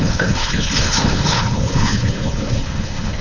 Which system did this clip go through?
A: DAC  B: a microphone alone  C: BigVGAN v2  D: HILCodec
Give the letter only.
D